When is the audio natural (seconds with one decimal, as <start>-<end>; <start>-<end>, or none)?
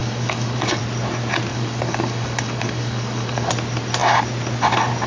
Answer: 0.8-1.5; 3.5-5.1